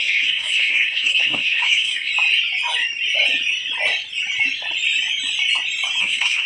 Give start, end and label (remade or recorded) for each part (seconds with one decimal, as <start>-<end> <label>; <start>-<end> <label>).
0.0-2.1 remade; 2.1-6.0 recorded; 6.0-6.5 remade